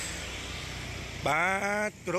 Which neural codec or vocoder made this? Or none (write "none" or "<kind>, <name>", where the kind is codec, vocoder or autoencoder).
none